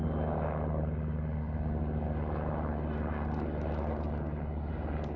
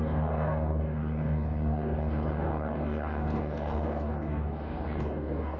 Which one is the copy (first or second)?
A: second